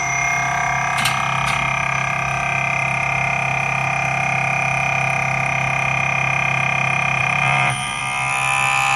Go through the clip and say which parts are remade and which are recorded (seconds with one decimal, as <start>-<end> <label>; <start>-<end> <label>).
0.0-7.2 recorded; 7.2-8.0 remade; 8.0-9.0 recorded